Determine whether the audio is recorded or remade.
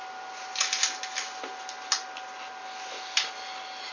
recorded